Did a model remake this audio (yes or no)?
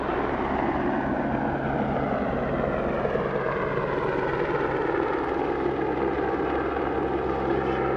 no